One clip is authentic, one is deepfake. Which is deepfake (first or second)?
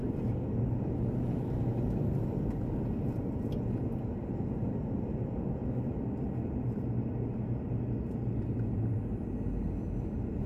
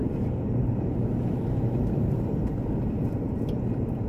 second